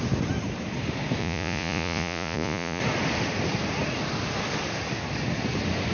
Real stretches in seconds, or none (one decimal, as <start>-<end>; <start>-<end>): 0.0-1.2; 2.8-5.9